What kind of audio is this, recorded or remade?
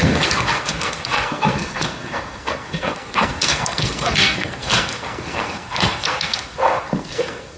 remade